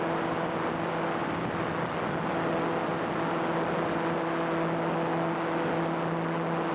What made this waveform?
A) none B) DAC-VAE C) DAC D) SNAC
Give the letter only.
A